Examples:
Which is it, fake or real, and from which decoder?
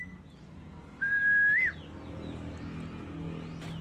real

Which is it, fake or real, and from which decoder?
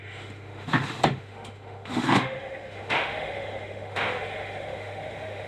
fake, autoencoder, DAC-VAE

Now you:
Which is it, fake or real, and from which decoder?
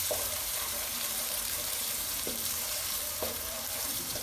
fake, vocoder, BigVGAN v2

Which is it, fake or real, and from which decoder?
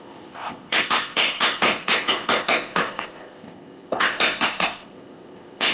fake, codec, ZipCodec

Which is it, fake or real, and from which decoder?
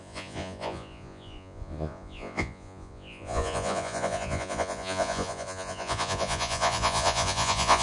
fake, vocoder, Vocos